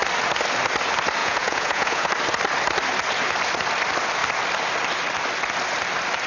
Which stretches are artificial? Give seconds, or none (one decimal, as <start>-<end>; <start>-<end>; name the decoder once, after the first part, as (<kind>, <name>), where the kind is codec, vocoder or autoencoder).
1.2-2.1 (vocoder, Vocos)